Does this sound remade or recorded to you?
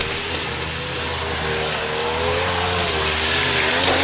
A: recorded